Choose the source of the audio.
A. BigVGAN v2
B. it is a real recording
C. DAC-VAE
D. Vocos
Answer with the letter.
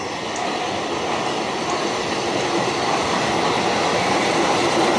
B